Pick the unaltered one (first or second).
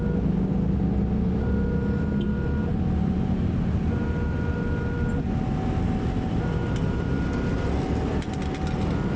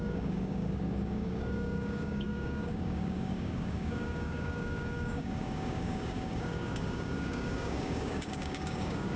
first